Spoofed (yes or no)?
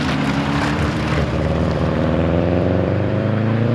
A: yes